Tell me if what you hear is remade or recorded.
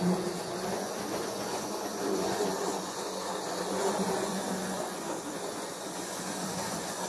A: remade